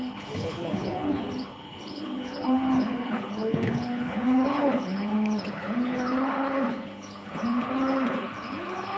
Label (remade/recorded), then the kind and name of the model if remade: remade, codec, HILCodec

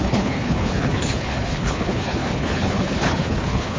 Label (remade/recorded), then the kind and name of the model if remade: remade, codec, HILCodec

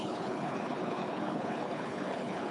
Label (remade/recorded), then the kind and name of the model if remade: remade, codec, HILCodec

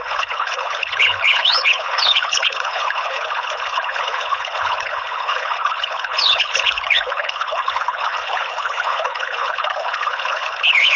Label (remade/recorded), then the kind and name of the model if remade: remade, codec, HILCodec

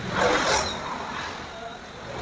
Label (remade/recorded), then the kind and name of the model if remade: recorded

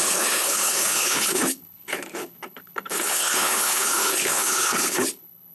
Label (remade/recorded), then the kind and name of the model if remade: remade, codec, HILCodec